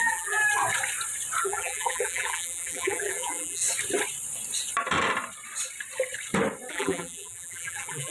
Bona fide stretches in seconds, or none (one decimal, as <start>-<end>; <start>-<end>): 0.4-1.4; 3.6-6.7